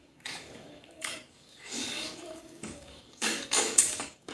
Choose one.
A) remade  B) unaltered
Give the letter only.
A